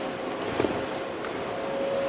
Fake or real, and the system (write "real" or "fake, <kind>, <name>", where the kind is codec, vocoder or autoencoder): real